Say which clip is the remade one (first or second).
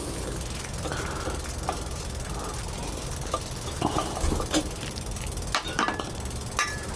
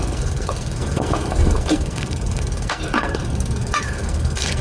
second